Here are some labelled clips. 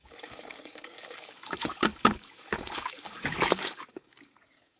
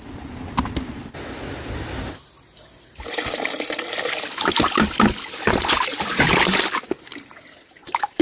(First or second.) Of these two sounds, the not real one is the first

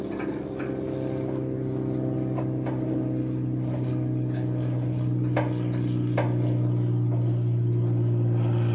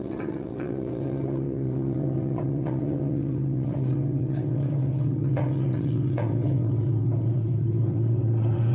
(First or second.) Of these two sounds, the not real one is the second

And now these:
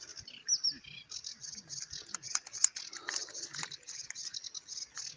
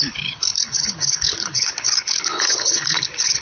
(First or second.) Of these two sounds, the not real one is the second